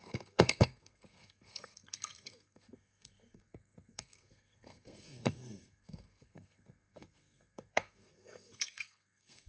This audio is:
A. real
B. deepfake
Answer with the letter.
B